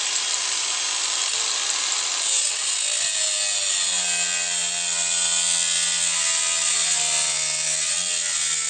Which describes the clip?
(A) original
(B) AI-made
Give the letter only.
A